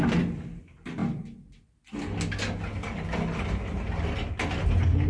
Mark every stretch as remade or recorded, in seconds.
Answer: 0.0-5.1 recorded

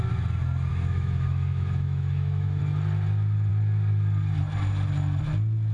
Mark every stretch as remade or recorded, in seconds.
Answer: 0.0-0.7 recorded; 0.7-2.6 remade; 2.6-5.7 recorded

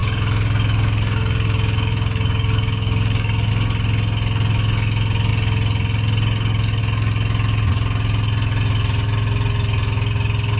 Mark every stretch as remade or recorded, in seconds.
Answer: 0.0-3.5 remade; 3.5-10.6 recorded